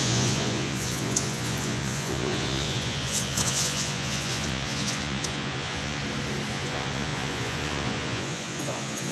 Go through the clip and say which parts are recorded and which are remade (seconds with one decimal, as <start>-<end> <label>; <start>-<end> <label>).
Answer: 0.0-6.0 remade; 6.0-6.5 recorded; 6.5-9.1 remade